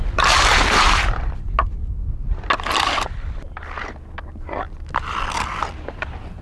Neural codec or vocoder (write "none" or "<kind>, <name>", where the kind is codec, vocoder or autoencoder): none